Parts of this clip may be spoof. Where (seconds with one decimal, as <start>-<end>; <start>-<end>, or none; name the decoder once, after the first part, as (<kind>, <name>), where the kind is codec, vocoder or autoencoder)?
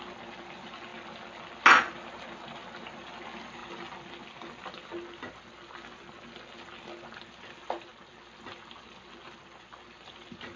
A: none